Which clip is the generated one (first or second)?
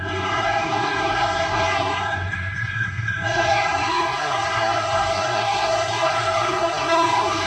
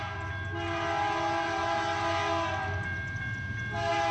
first